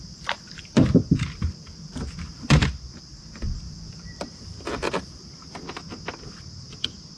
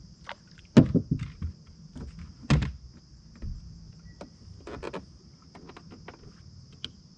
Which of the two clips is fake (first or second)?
first